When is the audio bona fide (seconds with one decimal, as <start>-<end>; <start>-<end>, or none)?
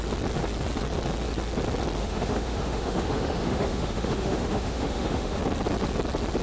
0.0-2.0; 5.4-6.4